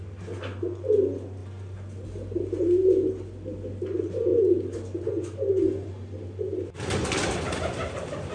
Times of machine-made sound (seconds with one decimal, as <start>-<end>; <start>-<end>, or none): none